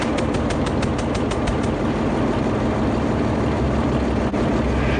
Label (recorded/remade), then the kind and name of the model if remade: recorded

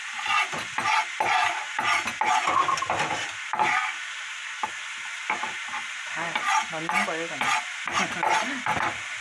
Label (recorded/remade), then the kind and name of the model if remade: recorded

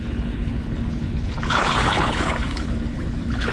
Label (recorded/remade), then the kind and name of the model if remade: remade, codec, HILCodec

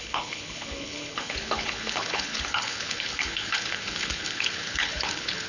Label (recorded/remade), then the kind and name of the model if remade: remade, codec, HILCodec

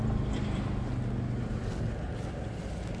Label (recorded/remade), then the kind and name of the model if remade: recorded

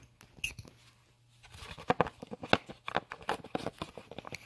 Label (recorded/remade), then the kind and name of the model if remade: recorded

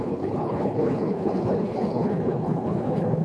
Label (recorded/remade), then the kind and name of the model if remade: remade, codec, HILCodec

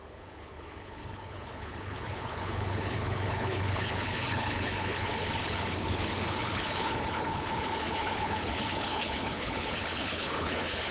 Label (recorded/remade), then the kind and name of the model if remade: remade, codec, HILCodec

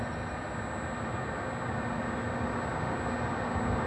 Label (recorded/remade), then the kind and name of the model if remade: recorded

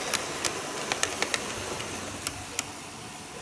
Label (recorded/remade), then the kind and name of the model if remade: recorded